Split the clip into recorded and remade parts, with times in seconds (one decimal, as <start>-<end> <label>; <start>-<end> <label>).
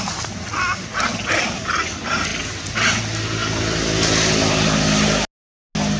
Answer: 0.0-6.0 recorded